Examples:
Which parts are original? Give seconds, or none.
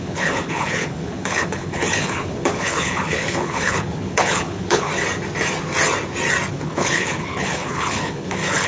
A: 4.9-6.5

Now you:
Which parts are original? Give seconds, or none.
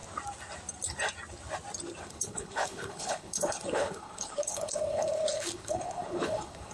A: 0.0-2.0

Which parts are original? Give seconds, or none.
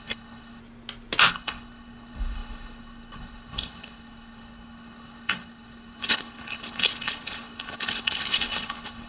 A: 0.6-1.3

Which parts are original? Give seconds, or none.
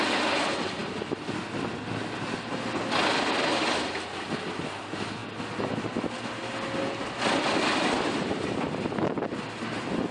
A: 0.0-10.1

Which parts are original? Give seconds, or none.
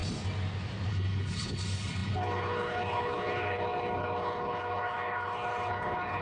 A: 0.0-0.9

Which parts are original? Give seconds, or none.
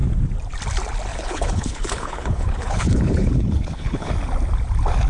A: 0.0-1.1; 4.1-5.1